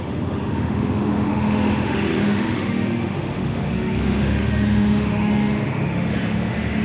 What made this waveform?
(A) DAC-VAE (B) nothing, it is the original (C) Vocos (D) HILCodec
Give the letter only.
A